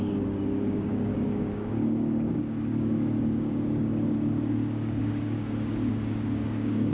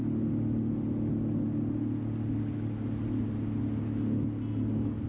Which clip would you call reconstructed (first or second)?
first